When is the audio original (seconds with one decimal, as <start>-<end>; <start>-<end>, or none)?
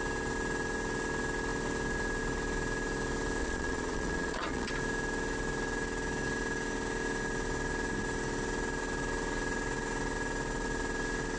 0.0-3.4; 4.7-11.4